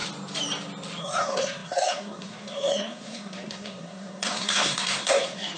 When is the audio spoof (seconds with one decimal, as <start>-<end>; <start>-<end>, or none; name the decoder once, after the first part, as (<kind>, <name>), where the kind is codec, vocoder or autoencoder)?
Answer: 1.0-5.6 (codec, SNAC)